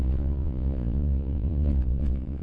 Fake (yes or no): yes